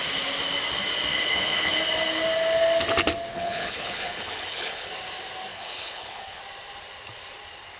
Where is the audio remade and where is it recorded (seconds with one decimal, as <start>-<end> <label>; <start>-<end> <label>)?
0.0-1.1 recorded; 1.1-1.8 remade; 1.8-3.3 recorded; 3.3-4.9 remade; 4.9-5.5 recorded; 5.5-6.4 remade; 6.4-7.8 recorded